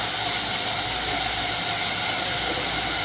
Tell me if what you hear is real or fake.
real